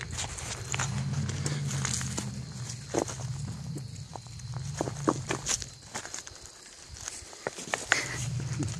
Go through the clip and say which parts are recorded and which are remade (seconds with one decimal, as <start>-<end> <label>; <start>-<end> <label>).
0.0-8.8 recorded